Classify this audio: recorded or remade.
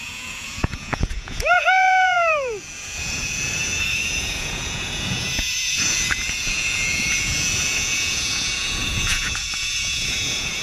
remade